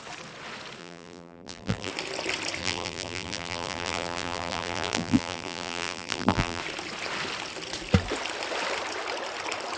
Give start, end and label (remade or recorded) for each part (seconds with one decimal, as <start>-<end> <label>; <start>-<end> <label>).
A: 0.0-0.8 recorded; 0.8-1.9 remade; 1.9-2.6 recorded; 2.6-6.6 remade; 6.6-9.8 recorded